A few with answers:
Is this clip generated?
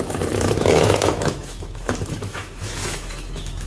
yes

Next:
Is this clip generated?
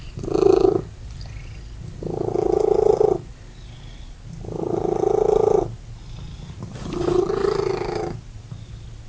no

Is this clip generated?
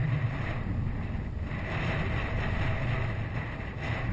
no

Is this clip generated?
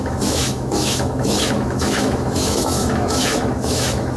yes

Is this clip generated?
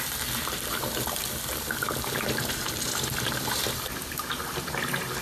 no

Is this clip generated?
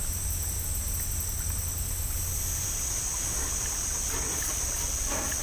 no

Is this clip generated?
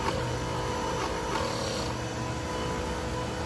no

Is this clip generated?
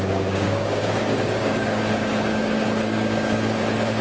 yes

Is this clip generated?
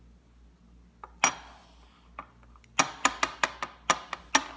no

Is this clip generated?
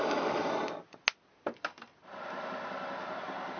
no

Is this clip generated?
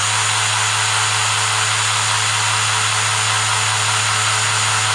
no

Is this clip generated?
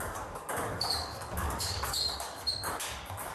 yes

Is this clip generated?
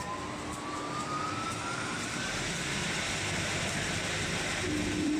yes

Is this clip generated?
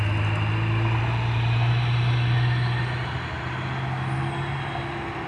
no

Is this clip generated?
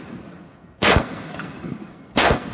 yes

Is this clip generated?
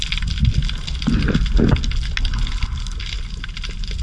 no